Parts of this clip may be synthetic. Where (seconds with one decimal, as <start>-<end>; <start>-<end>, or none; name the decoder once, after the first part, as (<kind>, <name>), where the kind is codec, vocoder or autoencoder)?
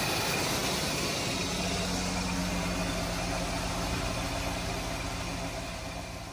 none